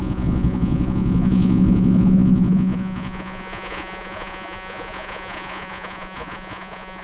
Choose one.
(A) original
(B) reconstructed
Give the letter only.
B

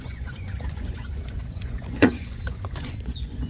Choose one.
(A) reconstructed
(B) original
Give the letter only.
A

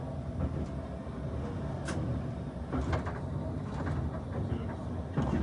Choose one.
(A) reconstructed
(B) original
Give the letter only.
B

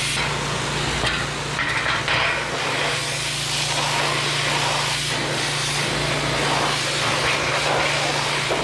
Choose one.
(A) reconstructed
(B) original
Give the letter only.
B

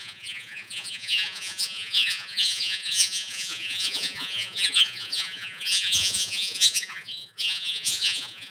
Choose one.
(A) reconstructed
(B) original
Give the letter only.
A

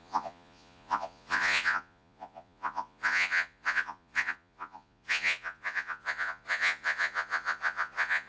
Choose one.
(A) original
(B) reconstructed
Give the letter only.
B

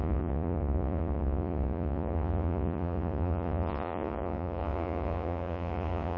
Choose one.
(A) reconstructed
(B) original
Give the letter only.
A